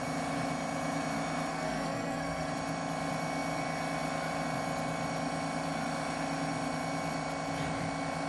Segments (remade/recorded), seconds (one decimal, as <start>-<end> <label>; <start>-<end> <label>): 0.0-1.5 recorded; 1.5-2.5 remade; 2.5-8.3 recorded